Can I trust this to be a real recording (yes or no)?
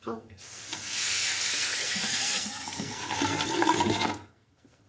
no